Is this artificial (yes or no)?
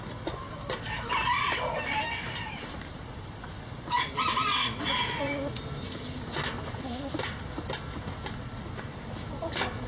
no